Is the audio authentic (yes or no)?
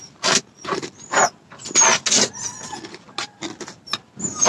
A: yes